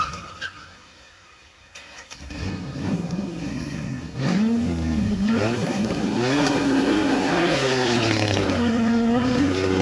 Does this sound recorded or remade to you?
remade